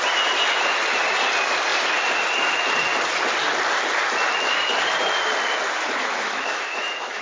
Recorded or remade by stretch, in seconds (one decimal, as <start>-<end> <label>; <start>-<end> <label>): 0.0-6.0 recorded; 6.0-7.2 remade